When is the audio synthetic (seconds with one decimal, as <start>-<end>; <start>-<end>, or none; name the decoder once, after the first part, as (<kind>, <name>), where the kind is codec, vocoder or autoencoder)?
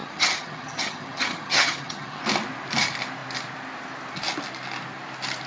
0.0-2.2 (vocoder, HiFi-GAN)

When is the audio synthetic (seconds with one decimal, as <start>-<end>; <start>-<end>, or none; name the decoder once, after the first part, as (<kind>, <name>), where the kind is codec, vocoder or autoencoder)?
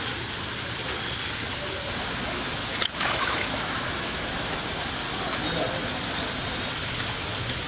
2.6-4.6 (autoencoder, DAC-VAE)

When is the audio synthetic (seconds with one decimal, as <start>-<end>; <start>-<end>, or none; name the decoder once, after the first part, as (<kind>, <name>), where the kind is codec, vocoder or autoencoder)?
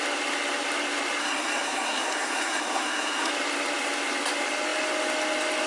1.2-3.3 (codec, SNAC)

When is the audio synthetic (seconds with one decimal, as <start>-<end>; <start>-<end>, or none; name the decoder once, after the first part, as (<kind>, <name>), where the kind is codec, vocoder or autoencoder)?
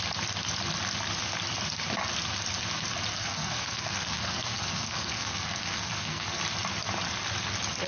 3.1-6.4 (codec, SNAC)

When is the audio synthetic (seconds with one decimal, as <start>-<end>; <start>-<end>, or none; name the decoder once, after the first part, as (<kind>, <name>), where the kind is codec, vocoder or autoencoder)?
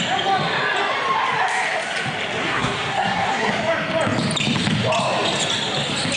2.4-3.5 (codec, SNAC)